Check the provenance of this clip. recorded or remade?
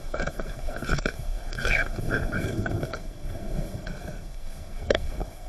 remade